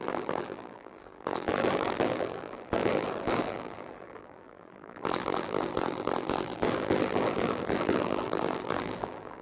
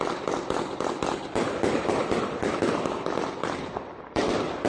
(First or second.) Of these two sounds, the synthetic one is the first